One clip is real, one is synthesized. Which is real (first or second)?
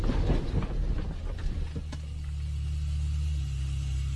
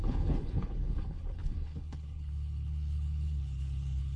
first